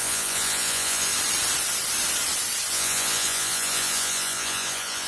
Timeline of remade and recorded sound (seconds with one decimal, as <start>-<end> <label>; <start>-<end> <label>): 0.0-1.1 remade; 1.1-2.7 recorded; 2.7-5.1 remade